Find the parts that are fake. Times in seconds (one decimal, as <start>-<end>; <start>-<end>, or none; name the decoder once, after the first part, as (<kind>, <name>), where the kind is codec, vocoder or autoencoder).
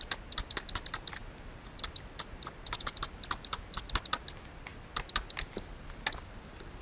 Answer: none